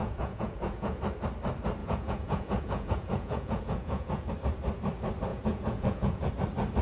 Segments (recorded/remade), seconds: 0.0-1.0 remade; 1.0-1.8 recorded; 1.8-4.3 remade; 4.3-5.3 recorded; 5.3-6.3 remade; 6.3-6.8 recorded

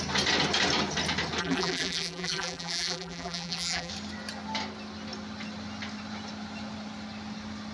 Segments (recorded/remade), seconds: 0.0-1.4 recorded; 1.4-3.9 remade; 3.9-7.7 recorded

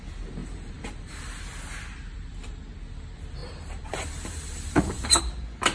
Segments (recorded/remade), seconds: 0.0-0.4 recorded; 0.4-1.4 remade; 1.4-3.4 recorded; 3.4-5.2 remade; 5.2-5.7 recorded

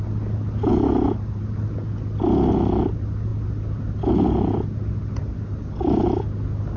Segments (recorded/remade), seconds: 0.0-6.8 recorded

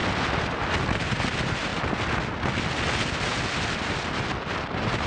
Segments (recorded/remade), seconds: 0.0-0.9 recorded; 0.9-1.7 remade; 1.7-4.6 recorded; 4.6-5.1 remade

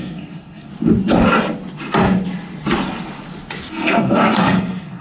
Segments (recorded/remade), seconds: 0.0-0.7 remade; 0.7-3.7 recorded; 3.7-5.0 remade

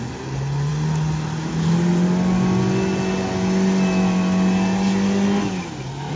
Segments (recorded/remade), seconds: 0.0-6.2 recorded

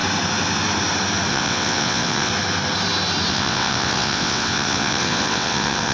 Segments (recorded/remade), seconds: 0.0-1.3 recorded; 1.3-2.3 remade; 2.3-3.3 recorded; 3.3-5.9 remade